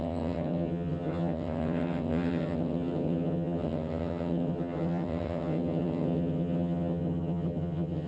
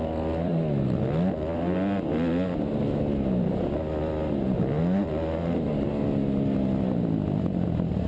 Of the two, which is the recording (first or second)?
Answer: second